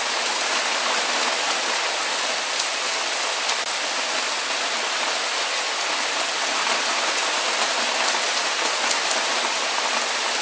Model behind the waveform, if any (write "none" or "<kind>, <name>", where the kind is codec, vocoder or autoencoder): none